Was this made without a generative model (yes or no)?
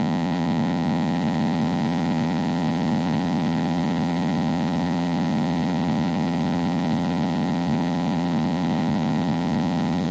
no